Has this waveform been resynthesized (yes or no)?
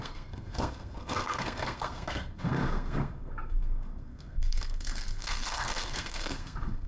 yes